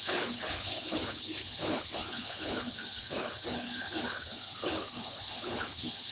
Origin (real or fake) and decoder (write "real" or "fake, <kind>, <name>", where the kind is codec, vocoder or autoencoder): fake, codec, HILCodec